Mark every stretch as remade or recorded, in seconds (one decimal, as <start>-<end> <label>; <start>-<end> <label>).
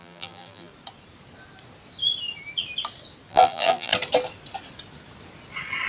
0.0-0.7 remade; 0.7-3.3 recorded; 3.3-3.9 remade; 3.9-5.9 recorded